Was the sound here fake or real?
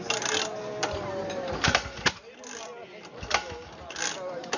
real